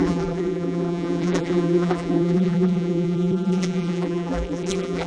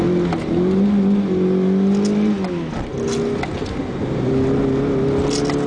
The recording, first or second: second